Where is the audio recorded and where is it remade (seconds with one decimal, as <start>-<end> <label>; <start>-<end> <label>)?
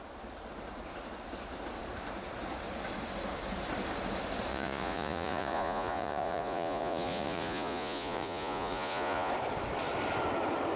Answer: 0.0-4.5 recorded; 4.5-9.3 remade; 9.3-10.8 recorded